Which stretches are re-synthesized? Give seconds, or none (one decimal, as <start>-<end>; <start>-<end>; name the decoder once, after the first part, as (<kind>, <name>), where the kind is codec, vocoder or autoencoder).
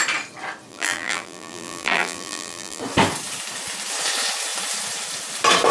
0.7-2.8 (vocoder, BigVGAN v2)